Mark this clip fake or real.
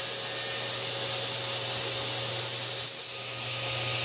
real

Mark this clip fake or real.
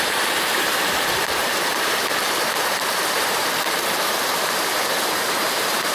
fake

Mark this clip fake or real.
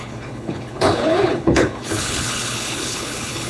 fake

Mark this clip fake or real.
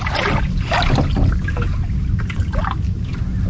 real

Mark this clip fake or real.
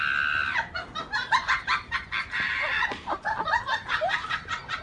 fake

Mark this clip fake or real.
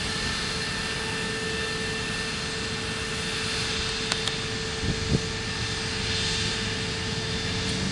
real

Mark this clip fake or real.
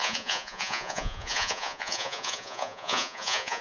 fake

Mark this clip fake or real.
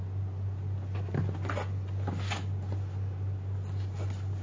real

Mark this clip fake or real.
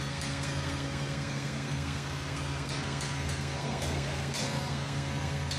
fake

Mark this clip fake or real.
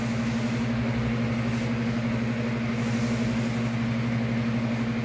real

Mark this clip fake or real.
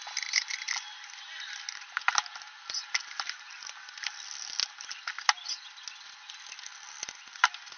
real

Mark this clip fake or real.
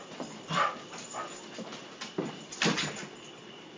real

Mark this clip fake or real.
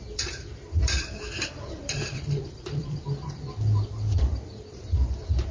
fake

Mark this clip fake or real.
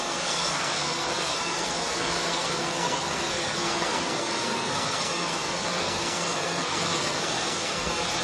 fake